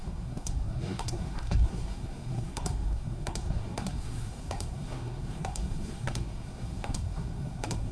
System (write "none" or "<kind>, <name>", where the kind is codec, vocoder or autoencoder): codec, SNAC